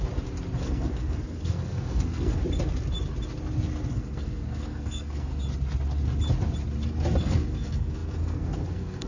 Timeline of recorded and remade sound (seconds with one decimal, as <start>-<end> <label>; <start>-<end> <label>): 0.0-0.6 recorded; 0.6-2.4 remade; 2.4-3.9 recorded; 3.9-5.3 remade; 5.3-7.2 recorded; 7.2-9.1 remade